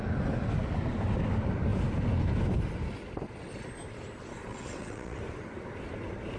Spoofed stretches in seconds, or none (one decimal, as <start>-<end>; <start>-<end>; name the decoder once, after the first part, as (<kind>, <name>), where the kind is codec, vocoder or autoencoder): 4.5-5.2 (vocoder, WaveNeXt)